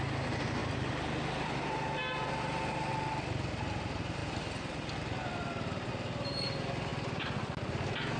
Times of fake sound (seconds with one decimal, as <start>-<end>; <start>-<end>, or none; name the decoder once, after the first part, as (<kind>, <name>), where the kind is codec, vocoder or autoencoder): none